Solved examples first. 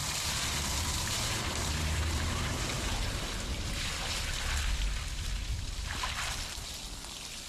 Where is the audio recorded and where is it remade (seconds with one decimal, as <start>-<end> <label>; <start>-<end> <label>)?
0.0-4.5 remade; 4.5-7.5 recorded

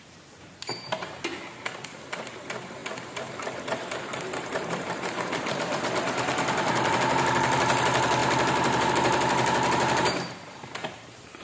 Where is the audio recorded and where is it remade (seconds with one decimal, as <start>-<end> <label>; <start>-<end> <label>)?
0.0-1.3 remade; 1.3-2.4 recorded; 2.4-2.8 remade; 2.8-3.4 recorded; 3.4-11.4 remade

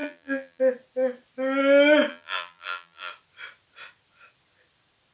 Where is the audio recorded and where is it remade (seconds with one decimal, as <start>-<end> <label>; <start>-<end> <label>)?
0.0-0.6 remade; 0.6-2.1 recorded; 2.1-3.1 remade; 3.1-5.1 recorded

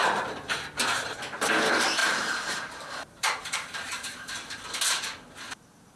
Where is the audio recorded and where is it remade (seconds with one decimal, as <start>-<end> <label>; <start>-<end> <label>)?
0.0-1.0 remade; 1.0-2.0 recorded; 2.0-4.6 remade; 4.6-6.0 recorded